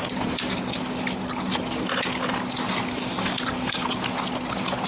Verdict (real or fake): real